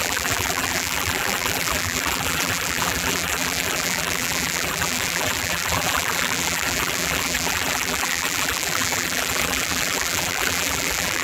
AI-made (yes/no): yes